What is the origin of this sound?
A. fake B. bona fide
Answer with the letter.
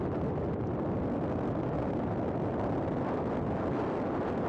B